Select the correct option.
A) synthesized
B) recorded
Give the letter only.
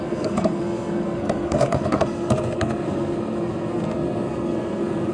A